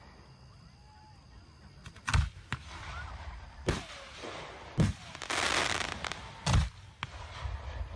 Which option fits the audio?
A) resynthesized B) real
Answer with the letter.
B